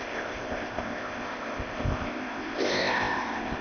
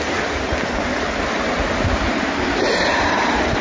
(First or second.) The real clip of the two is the second